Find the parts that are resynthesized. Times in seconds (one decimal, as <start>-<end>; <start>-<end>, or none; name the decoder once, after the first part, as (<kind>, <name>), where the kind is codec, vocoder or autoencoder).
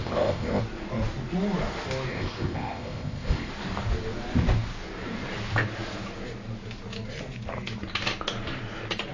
0.0-0.6 (codec, ZipCodec); 2.1-3.5